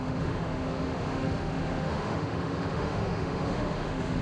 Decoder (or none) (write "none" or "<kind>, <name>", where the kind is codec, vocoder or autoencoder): autoencoder, DAC-VAE